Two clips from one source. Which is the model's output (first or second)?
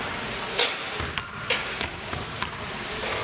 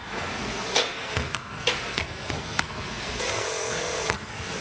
second